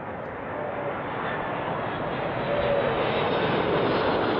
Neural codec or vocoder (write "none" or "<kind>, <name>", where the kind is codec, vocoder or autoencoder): none